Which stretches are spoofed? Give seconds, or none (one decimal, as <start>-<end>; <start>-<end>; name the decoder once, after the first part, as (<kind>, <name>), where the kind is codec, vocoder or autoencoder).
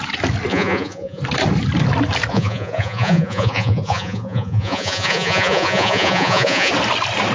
0.5-1.2 (vocoder, Vocos); 2.3-6.7